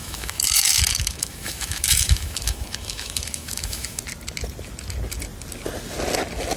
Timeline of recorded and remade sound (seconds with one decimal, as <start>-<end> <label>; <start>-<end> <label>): 0.0-4.0 remade; 4.0-6.6 recorded